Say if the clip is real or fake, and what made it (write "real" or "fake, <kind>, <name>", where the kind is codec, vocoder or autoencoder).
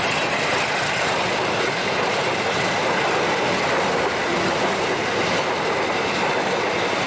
real